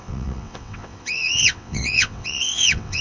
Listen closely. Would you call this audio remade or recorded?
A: remade